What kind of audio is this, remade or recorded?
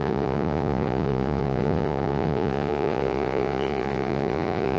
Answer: remade